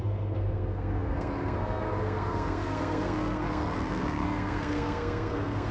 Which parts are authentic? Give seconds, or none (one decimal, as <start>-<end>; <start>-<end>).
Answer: none